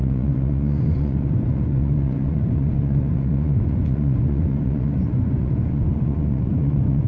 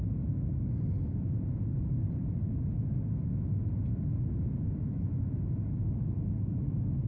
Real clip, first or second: second